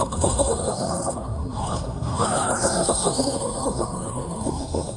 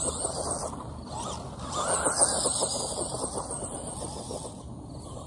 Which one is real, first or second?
second